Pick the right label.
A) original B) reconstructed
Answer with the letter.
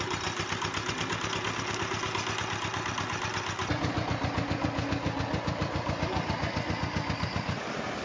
A